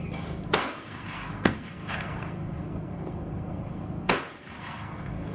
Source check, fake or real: fake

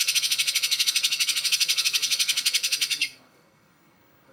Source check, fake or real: fake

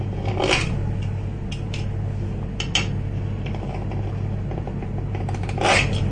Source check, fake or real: real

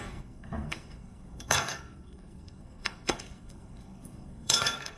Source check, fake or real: fake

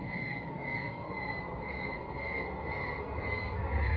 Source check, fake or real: fake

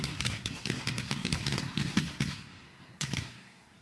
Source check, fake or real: fake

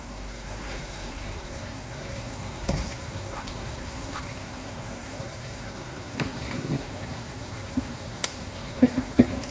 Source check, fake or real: fake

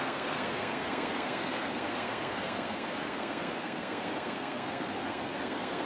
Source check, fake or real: fake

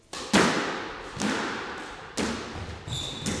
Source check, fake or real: real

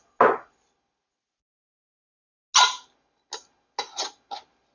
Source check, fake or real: real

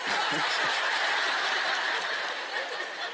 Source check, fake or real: real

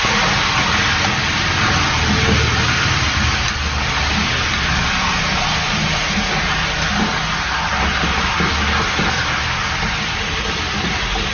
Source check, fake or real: real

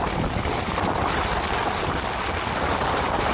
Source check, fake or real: real